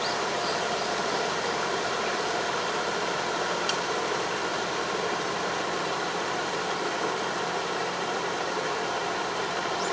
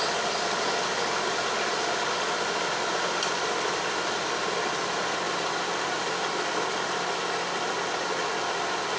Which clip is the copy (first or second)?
first